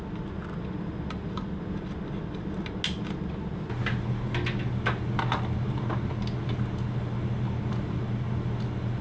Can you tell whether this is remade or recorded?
recorded